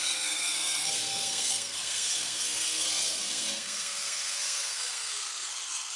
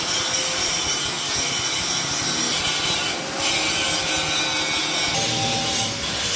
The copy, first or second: first